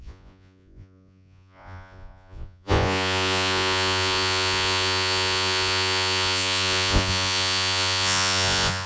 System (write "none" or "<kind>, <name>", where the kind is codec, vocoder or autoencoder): vocoder, Vocos